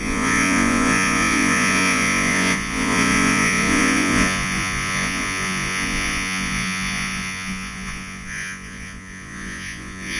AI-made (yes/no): yes